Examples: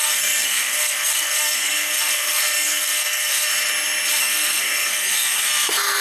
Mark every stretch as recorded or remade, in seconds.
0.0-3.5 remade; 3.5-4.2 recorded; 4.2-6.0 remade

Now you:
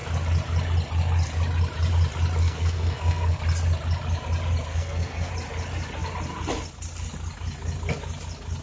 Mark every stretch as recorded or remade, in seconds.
0.0-2.4 recorded; 2.4-3.4 remade; 3.4-4.7 recorded; 4.7-5.3 remade; 5.3-8.6 recorded

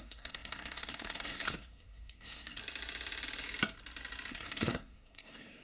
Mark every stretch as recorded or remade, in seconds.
0.0-2.6 remade; 2.6-4.3 recorded; 4.3-5.6 remade

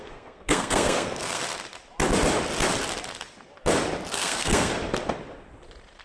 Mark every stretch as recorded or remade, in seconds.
0.0-1.4 remade; 1.4-4.1 recorded; 4.1-4.7 remade; 4.7-6.0 recorded

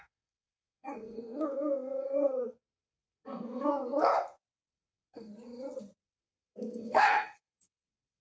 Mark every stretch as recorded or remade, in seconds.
0.0-4.1 remade; 4.1-4.7 recorded; 4.7-5.3 remade; 5.3-6.0 recorded; 6.0-8.2 remade

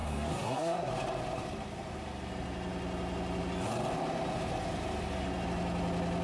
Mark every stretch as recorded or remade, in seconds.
0.0-0.9 remade; 0.9-6.2 recorded

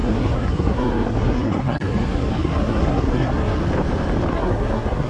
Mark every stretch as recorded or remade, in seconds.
0.0-3.6 remade; 3.6-4.3 recorded; 4.3-5.1 remade